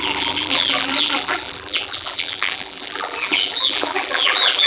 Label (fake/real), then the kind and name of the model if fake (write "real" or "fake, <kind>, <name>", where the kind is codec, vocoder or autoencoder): fake, vocoder, BigVGAN v2